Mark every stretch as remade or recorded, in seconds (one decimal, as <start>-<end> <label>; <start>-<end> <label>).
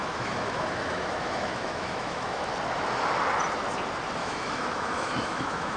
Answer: 0.0-2.5 remade; 2.5-4.2 recorded; 4.2-5.8 remade